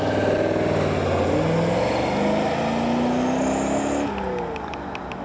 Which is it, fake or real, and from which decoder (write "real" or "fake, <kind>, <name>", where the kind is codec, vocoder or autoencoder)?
real